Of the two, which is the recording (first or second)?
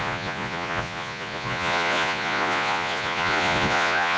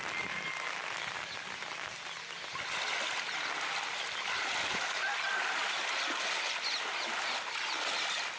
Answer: second